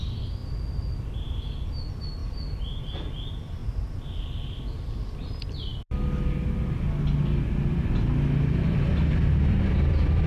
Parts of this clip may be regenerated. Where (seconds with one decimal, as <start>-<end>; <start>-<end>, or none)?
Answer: 0.0-0.4; 1.5-3.6; 5.1-5.7; 9.4-10.3